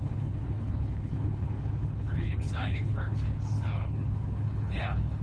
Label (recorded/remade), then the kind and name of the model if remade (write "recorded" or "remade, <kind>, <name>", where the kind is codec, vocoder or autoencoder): remade, codec, HILCodec